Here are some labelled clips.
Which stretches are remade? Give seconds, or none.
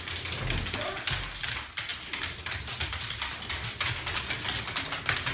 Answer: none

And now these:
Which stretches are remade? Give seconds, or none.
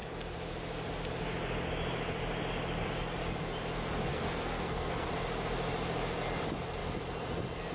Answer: 4.1-5.1 (codec, SNAC)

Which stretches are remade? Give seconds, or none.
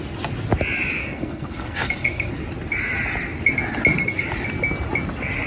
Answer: 1.0-2.3 (codec, SNAC)